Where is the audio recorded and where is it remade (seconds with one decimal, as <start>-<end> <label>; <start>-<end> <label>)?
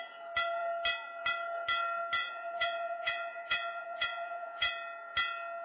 0.0-2.2 recorded; 2.2-4.7 remade; 4.7-5.6 recorded